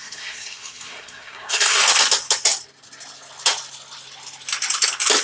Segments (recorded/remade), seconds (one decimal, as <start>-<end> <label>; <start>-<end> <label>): 0.0-1.8 remade; 1.8-5.2 recorded